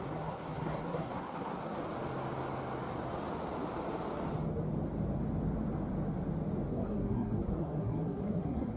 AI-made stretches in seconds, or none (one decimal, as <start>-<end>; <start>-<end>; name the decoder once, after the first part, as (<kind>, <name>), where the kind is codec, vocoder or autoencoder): 0.0-1.8 (codec, SNAC); 6.7-8.8